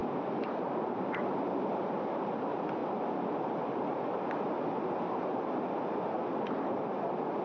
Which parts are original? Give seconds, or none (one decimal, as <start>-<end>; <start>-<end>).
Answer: 0.0-7.4